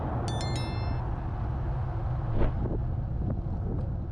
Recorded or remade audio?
recorded